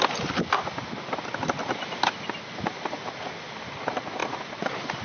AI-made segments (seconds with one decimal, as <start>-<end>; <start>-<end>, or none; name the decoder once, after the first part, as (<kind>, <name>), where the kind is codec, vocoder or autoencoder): none